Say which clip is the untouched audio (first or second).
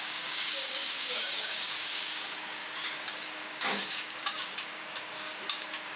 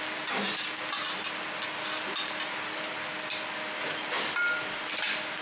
second